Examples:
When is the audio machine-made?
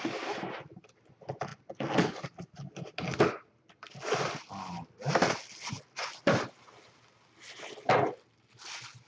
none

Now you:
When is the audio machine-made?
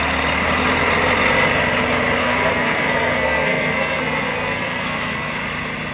2.2-5.3 (codec, SNAC)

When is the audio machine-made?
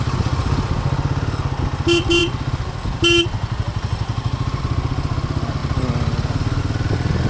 none